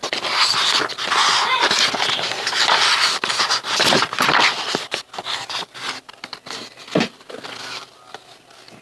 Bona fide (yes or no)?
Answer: yes